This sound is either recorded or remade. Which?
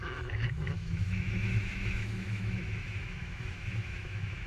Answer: remade